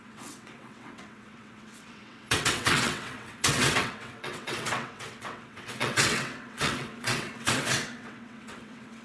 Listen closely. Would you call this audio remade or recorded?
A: remade